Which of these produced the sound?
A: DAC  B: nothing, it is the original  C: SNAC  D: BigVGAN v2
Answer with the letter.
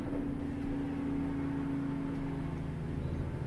B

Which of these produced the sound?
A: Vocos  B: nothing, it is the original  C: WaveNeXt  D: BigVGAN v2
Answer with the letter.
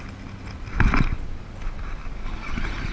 B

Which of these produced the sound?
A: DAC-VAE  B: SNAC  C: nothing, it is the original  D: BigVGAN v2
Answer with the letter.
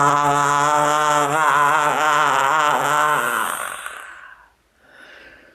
C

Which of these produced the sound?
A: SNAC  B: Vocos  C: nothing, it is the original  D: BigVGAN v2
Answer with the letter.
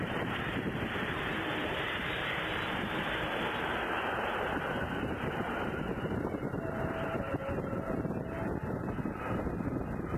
D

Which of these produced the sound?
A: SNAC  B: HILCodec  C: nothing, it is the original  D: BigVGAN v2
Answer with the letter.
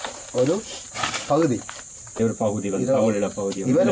D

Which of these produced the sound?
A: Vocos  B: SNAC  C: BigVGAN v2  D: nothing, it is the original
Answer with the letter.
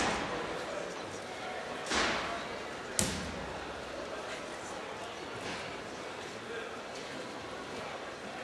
D